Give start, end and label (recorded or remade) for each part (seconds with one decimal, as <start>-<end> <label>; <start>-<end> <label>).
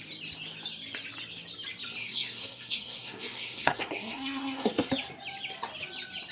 0.0-2.0 recorded; 2.0-4.9 remade; 4.9-6.3 recorded